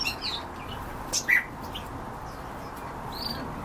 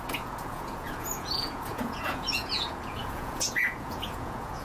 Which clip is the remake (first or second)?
second